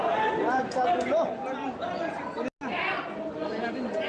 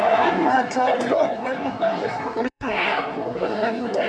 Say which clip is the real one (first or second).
first